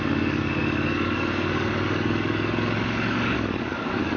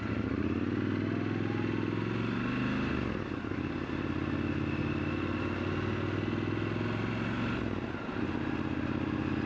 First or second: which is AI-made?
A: first